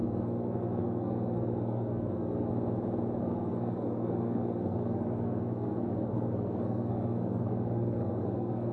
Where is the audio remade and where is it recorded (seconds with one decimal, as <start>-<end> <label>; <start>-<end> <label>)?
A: 0.0-2.5 remade; 2.5-3.2 recorded; 3.2-8.7 remade